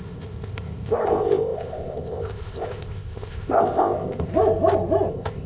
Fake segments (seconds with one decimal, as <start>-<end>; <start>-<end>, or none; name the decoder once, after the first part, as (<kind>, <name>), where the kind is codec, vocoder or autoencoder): 0.0-4.3 (codec, ZipCodec); 5.1-5.5